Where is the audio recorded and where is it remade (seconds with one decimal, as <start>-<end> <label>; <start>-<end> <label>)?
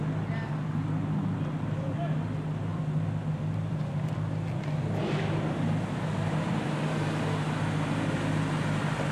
0.0-9.1 recorded